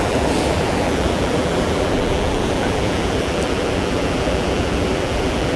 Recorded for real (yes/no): no